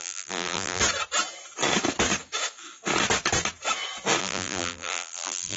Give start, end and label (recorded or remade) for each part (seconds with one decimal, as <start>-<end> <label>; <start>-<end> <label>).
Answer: 0.0-0.8 remade; 0.8-4.2 recorded; 4.2-5.6 remade